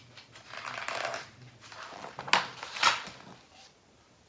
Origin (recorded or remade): recorded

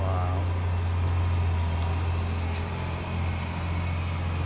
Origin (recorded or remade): recorded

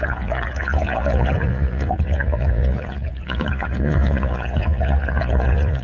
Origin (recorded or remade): remade